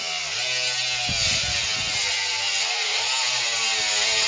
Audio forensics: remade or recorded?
recorded